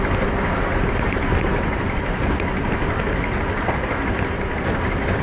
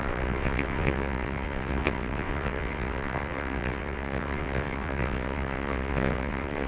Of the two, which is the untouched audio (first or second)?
first